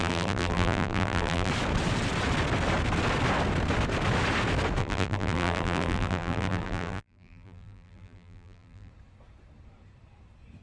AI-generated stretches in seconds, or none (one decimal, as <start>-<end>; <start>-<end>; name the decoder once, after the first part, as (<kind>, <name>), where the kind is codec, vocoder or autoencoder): 0.0-1.5 (vocoder, BigVGAN v2); 4.8-8.9